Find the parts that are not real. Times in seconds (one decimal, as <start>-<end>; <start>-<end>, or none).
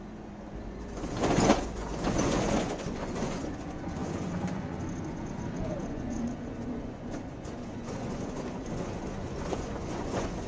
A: 0.0-10.5